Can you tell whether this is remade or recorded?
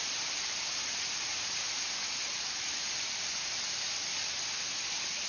recorded